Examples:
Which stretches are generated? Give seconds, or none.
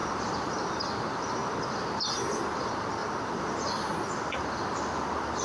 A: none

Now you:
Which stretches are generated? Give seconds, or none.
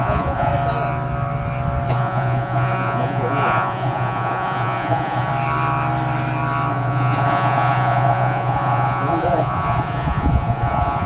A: 0.0-0.5 (vocoder, Vocos); 1.9-5.3; 6.7-11.1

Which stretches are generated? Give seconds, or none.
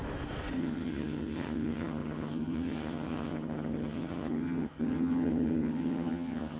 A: 0.6-6.6 (vocoder, HiFi-GAN)